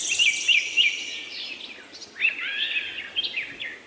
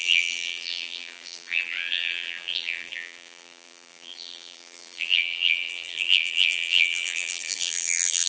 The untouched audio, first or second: first